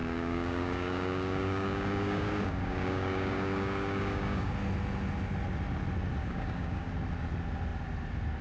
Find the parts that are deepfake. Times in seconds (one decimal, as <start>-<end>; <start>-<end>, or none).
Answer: 0.0-4.5; 6.2-6.9